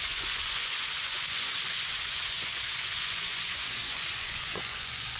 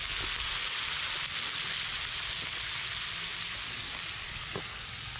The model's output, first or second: first